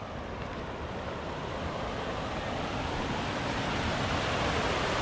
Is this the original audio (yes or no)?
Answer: yes